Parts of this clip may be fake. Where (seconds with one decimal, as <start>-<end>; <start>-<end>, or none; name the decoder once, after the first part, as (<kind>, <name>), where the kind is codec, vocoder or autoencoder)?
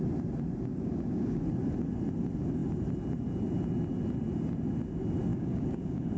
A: 0.7-1.4 (codec, DAC); 5.3-6.2